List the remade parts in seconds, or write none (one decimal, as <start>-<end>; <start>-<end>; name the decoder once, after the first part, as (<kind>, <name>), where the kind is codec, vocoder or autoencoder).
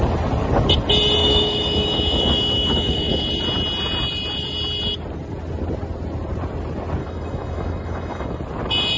1.2-3.3 (autoencoder, DAC-VAE); 7.0-8.4